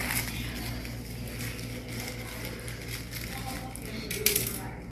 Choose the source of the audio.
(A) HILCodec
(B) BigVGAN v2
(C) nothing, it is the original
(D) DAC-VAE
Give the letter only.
C